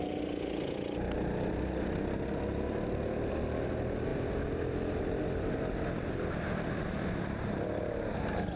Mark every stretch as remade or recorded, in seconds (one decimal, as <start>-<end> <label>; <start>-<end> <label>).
0.0-8.6 recorded